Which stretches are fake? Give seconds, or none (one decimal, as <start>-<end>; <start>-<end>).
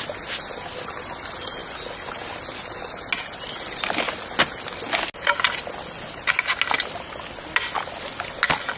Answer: none